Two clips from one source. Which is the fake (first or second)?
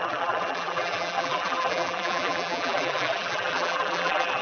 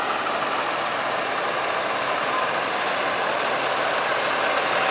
first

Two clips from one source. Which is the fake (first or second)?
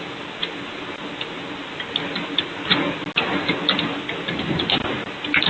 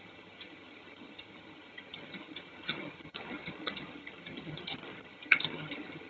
second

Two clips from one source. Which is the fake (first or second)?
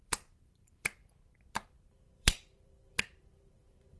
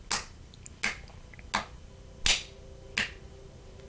first